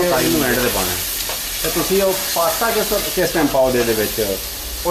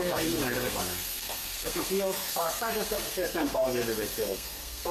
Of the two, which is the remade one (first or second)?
second